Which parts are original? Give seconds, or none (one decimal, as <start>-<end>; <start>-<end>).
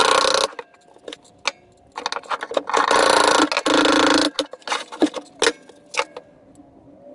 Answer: 0.0-7.1